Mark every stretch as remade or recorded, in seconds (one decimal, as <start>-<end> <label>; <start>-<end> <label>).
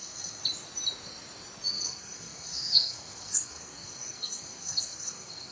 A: 0.0-0.4 remade; 0.4-1.7 recorded; 1.7-5.5 remade